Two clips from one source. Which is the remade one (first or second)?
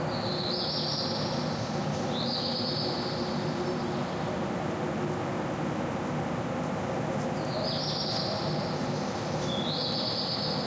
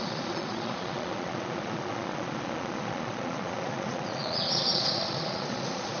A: second